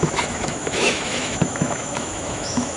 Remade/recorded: remade